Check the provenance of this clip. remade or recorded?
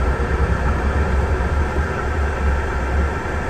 remade